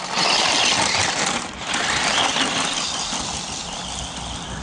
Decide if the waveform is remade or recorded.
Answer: recorded